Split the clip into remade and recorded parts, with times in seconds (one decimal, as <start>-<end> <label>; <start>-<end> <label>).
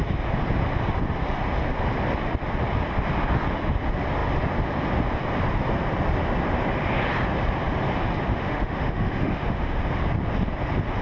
0.0-8.3 recorded; 8.3-9.8 remade; 9.8-11.0 recorded